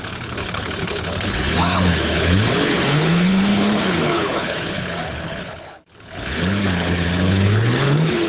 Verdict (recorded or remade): remade